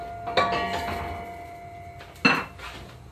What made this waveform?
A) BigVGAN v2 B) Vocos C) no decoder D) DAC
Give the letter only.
C